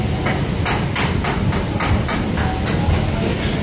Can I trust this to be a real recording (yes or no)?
yes